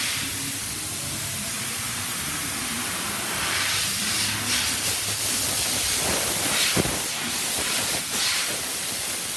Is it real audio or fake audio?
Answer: fake